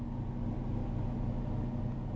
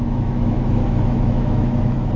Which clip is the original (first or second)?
first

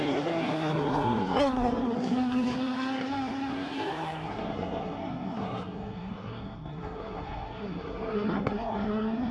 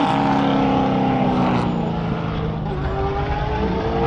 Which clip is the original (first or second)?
second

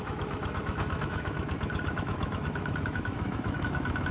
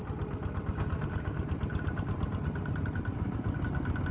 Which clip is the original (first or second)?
second